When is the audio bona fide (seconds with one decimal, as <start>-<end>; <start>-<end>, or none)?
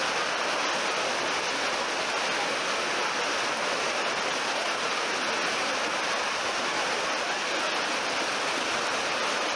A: 0.0-9.6